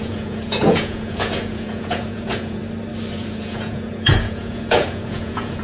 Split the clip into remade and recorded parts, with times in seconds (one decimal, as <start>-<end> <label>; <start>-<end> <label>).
0.0-2.6 remade; 2.6-3.1 recorded; 3.1-5.6 remade